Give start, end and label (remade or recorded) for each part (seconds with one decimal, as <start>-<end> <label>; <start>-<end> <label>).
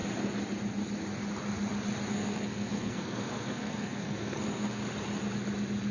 0.0-2.1 recorded; 2.1-4.8 remade; 4.8-5.9 recorded